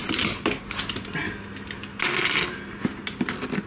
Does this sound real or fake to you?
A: real